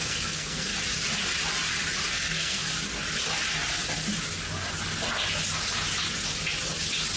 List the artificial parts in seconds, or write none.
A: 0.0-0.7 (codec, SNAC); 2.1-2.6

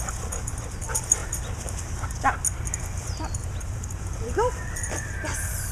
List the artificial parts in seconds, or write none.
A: none

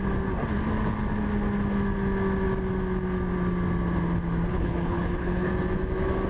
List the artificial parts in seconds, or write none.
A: 4.5-5.5 (codec, HILCodec)

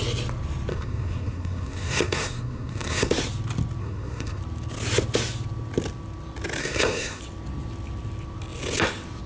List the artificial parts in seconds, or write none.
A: 0.7-3.1 (codec, SNAC); 3.8-4.4; 6.6-7.2

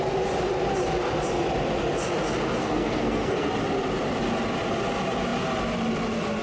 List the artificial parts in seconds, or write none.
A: 2.6-3.5 (codec, SNAC)

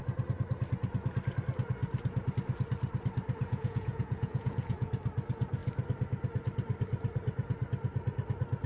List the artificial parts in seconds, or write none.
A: 3.4-4.9 (vocoder, Vocos)